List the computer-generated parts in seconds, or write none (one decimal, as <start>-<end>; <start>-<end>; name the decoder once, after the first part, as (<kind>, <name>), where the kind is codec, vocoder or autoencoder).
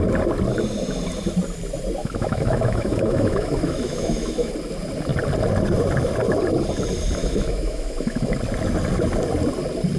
2.0-4.5 (autoencoder, DAC-VAE); 7.2-8.3